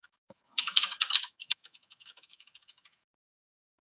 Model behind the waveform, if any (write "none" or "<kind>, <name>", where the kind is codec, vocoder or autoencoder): autoencoder, DAC-VAE